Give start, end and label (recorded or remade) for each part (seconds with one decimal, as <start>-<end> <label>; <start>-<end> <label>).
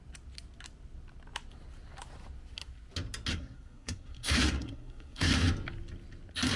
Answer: 0.0-3.3 recorded; 3.3-5.3 remade; 5.3-6.6 recorded